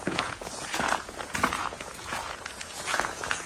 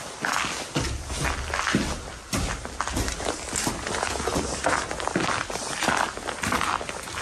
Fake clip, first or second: first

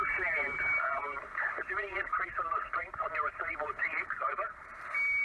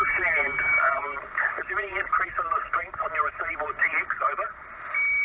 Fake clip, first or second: first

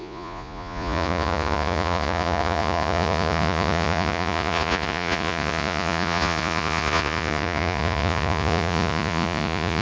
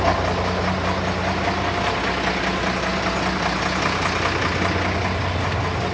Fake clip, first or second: first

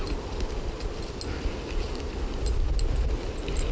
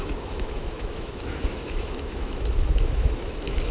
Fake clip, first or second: second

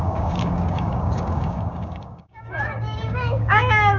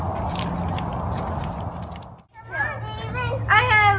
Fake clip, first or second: first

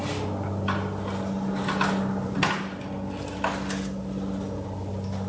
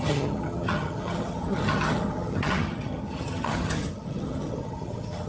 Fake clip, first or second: second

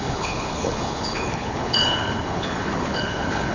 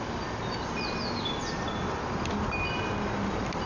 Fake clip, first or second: first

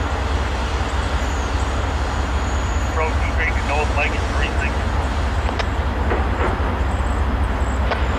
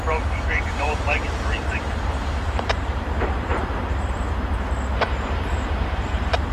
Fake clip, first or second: second